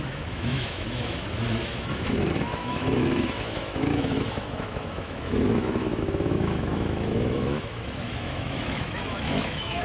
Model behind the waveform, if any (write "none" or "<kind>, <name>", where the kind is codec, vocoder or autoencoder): autoencoder, DAC-VAE